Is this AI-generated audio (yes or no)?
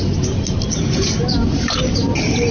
no